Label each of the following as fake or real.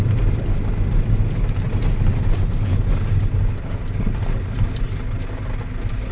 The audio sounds real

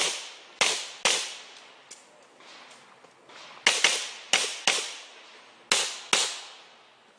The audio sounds real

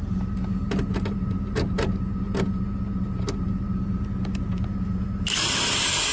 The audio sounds real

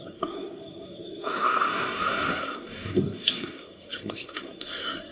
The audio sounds fake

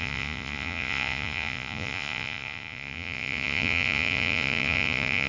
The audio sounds fake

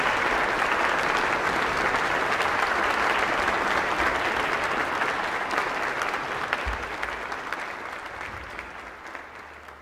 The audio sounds real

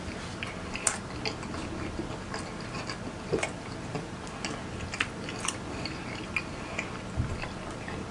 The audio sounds real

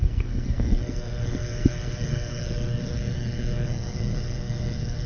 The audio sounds fake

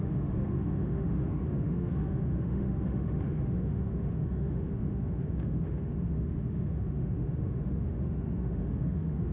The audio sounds fake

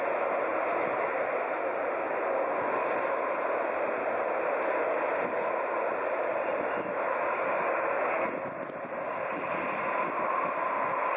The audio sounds real